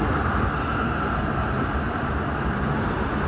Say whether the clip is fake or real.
real